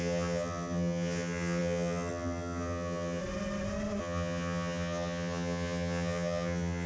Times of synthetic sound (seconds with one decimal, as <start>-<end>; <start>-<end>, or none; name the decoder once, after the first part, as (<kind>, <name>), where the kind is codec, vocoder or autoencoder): 0.0-3.2 (vocoder, HiFi-GAN); 4.0-6.9